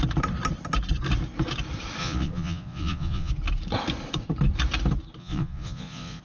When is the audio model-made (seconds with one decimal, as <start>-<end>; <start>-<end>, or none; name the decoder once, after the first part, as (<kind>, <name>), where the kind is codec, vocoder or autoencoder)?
2.0-3.3 (vocoder, Vocos); 5.2-6.2